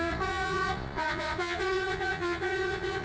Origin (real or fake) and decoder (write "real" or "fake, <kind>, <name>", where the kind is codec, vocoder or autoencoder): fake, vocoder, Vocos